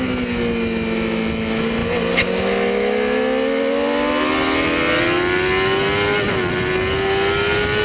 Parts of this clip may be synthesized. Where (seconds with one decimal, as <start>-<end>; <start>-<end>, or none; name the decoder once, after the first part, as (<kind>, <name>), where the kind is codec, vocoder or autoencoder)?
none